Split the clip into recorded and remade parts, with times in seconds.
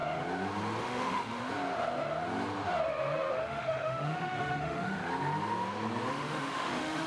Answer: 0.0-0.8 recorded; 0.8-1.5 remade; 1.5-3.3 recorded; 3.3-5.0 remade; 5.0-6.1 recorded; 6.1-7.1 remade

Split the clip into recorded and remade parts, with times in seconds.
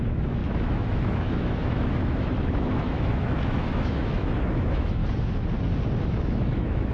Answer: 0.0-5.0 remade; 5.0-6.0 recorded; 6.0-6.9 remade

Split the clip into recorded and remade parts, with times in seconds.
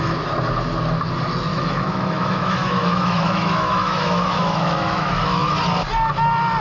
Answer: 0.0-1.5 recorded; 1.5-5.5 remade; 5.5-6.6 recorded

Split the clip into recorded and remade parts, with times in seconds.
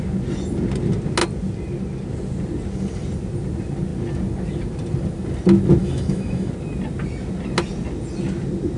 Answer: 0.0-5.8 recorded; 5.8-6.5 remade; 6.5-8.8 recorded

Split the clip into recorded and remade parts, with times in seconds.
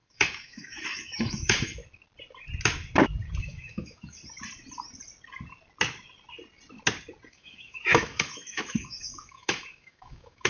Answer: 0.0-1.8 remade; 1.8-3.4 recorded; 3.4-4.2 remade; 4.2-7.3 recorded; 7.3-10.5 remade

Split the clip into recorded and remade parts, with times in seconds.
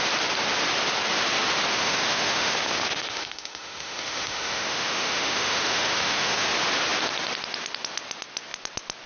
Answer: 0.0-1.7 recorded; 1.7-6.5 remade; 6.5-9.1 recorded